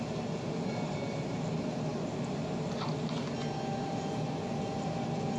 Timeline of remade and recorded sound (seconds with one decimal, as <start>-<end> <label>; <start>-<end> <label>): 0.0-5.4 recorded